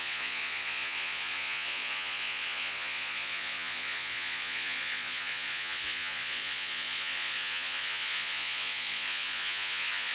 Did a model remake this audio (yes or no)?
yes